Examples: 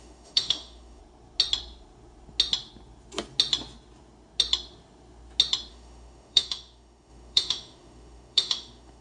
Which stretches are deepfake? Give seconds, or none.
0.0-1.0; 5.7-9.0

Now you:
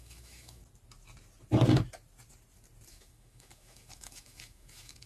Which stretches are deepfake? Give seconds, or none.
0.0-0.6; 2.9-5.1

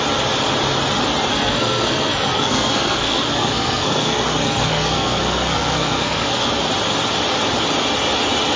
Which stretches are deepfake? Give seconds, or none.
1.3-6.5

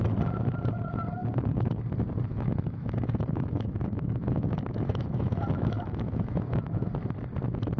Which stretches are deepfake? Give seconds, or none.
2.3-6.9